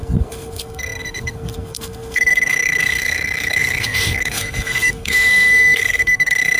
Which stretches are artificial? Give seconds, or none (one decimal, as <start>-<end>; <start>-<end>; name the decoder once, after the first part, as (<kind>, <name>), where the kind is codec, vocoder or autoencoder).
0.0-6.6 (codec, SNAC)